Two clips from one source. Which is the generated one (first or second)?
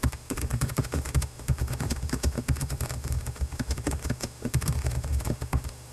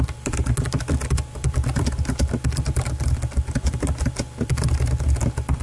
first